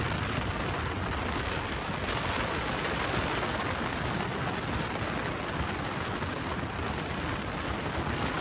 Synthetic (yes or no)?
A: no